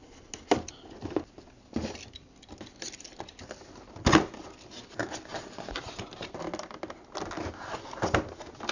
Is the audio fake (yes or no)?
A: no